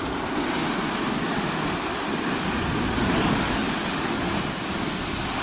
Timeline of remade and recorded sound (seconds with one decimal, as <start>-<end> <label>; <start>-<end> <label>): 0.0-3.0 recorded; 3.0-4.2 remade; 4.2-5.4 recorded